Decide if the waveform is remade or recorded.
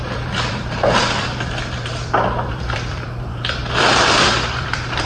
remade